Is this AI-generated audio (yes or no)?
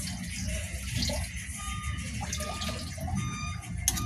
no